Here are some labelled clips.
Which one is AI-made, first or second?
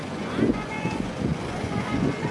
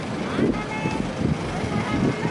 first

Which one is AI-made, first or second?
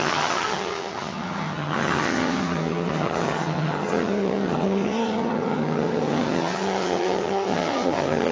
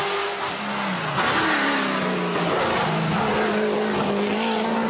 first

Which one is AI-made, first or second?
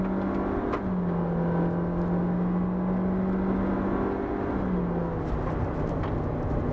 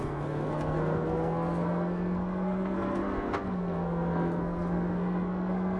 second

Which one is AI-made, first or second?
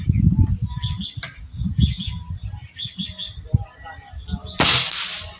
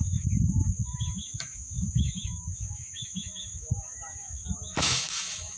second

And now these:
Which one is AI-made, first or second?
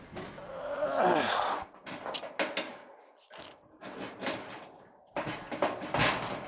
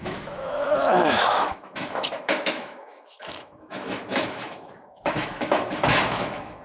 second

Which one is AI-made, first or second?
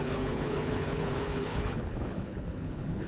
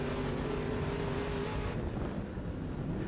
first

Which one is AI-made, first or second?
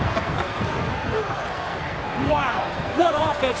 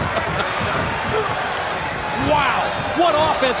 first